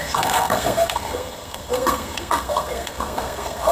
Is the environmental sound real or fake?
fake